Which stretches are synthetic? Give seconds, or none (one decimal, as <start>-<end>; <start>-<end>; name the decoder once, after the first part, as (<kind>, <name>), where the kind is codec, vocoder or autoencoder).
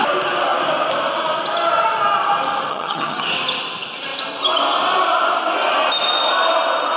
2.7-3.3 (vocoder, HiFi-GAN)